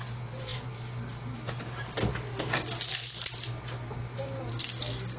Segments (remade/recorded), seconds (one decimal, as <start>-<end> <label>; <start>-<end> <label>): 0.0-4.5 recorded; 4.5-5.2 remade